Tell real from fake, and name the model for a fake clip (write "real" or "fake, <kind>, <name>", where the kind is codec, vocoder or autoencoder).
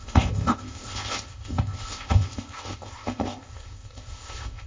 fake, codec, ZipCodec